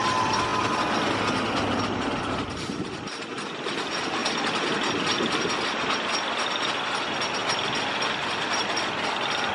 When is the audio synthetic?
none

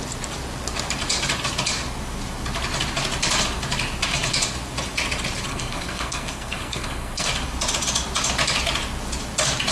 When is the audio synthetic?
5.5-7.3 (codec, SNAC)

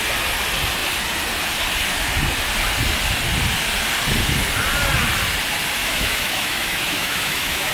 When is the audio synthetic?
5.8-7.7 (autoencoder, DAC-VAE)